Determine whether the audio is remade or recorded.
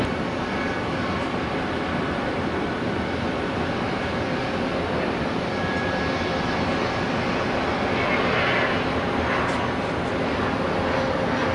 recorded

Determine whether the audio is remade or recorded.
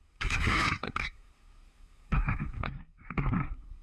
remade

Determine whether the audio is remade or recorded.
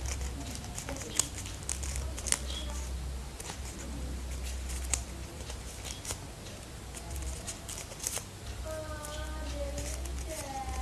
recorded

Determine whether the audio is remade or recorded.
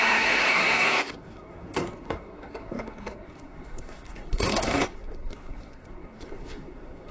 remade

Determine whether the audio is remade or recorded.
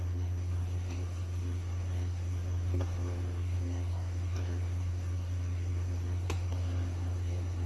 remade